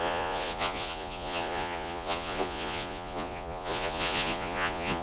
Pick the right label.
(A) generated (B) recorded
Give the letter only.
A